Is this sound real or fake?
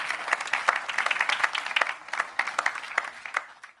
real